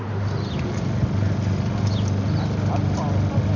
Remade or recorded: recorded